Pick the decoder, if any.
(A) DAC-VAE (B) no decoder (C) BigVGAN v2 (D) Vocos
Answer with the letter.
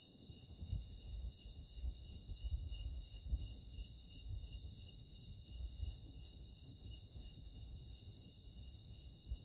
A